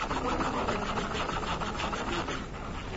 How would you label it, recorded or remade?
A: recorded